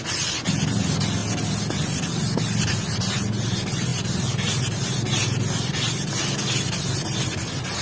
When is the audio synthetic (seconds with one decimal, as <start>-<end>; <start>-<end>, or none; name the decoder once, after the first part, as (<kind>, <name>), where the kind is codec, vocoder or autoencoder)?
none